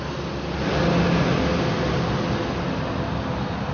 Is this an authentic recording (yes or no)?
yes